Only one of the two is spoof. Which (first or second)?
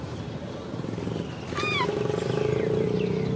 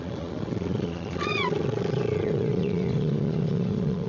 second